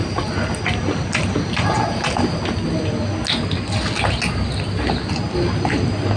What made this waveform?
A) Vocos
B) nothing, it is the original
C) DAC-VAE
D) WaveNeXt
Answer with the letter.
B